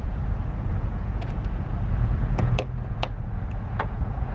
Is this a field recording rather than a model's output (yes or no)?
no